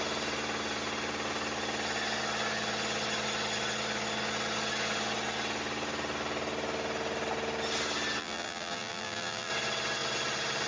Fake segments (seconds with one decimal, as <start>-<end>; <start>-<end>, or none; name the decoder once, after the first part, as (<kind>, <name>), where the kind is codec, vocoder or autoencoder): 8.2-9.5 (vocoder, BigVGAN v2)